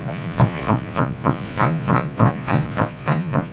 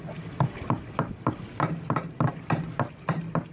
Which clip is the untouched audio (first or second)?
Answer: second